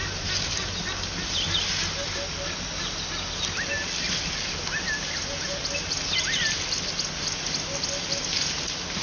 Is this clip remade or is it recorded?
recorded